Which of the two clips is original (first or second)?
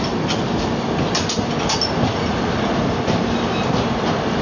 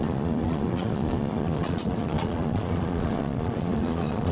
first